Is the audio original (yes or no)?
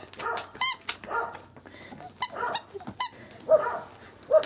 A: yes